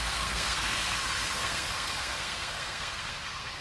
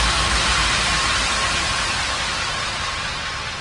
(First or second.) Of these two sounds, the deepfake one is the first